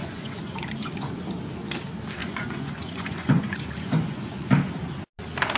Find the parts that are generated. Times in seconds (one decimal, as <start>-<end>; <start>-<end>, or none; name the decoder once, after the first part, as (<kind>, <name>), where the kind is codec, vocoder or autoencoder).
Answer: 0.0-1.1 (vocoder, Vocos); 2.2-4.5